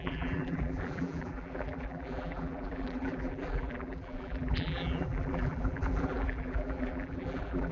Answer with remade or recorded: remade